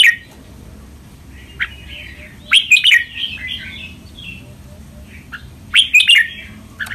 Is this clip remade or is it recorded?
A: recorded